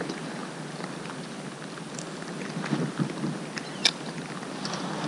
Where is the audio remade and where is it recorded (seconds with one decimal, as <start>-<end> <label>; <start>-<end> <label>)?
0.0-5.1 recorded